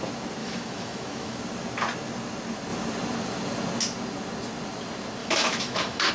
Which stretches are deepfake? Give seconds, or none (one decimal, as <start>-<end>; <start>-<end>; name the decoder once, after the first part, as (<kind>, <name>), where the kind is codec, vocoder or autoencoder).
0.4-1.4 (autoencoder, DAC-VAE); 5.2-6.1